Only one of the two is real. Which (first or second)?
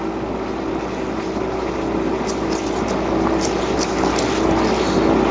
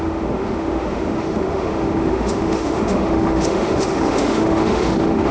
first